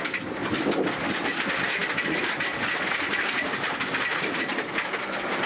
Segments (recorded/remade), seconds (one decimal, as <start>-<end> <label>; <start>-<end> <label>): 0.0-5.5 remade